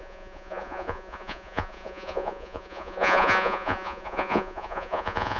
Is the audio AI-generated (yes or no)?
yes